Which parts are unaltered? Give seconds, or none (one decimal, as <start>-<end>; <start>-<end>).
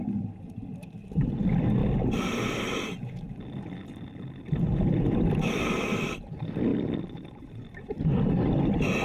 0.0-9.0